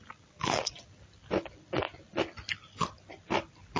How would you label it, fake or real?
real